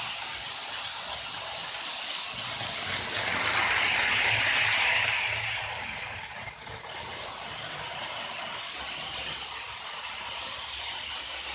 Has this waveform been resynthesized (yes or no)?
no